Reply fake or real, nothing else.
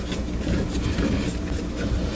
real